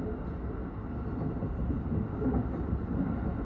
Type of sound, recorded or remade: recorded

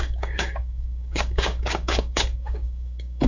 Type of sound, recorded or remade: remade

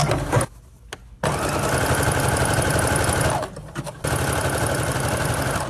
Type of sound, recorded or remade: recorded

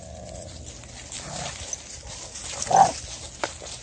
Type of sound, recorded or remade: recorded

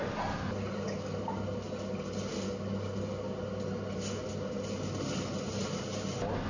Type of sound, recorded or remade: recorded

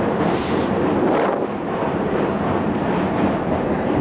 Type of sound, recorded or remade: remade